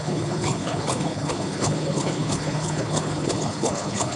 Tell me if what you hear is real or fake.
fake